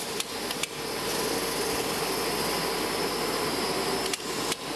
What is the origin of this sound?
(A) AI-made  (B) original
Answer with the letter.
B